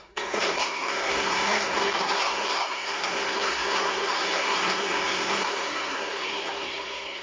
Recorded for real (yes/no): no